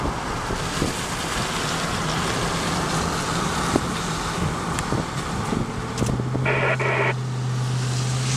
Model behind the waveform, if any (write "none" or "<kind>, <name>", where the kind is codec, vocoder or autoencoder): none